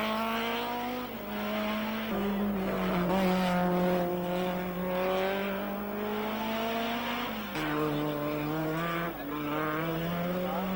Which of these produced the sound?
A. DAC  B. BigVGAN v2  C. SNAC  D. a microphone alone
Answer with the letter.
D